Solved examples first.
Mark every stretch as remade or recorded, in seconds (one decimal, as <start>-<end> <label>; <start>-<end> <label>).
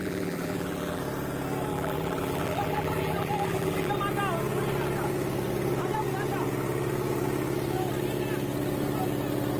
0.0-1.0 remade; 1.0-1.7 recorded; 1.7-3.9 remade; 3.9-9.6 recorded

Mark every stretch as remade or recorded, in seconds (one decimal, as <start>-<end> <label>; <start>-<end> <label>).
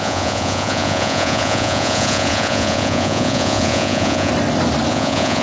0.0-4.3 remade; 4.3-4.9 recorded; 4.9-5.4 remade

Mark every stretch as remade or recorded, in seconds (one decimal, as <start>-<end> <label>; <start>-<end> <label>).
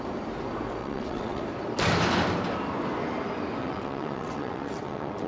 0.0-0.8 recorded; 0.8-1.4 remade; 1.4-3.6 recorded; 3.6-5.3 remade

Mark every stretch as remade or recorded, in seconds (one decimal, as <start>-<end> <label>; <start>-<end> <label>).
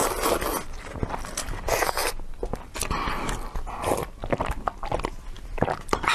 0.0-6.1 recorded